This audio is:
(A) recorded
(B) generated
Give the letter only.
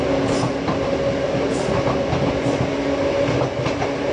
A